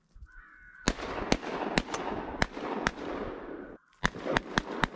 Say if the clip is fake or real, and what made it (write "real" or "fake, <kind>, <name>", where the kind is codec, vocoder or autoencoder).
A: real